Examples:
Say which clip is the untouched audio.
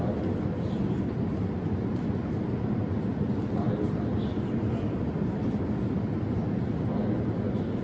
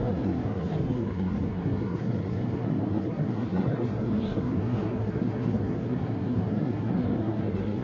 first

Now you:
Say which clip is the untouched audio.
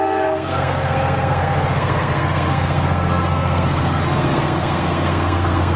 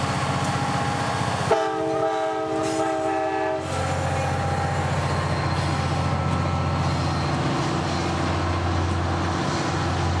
second